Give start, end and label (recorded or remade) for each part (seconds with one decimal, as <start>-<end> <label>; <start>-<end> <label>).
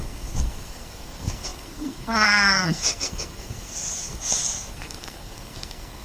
0.0-6.0 remade